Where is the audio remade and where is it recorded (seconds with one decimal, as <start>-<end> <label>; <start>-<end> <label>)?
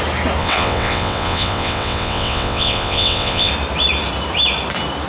0.0-0.4 recorded; 0.4-3.5 remade; 3.5-5.1 recorded